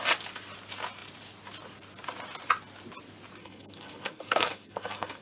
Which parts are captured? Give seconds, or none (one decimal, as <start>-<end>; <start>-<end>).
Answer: 0.0-3.4